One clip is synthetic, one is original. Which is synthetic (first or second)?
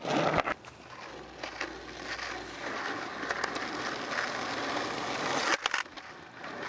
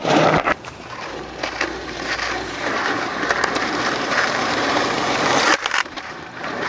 second